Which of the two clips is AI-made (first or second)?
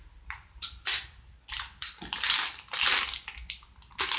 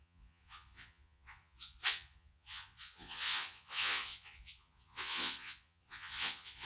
second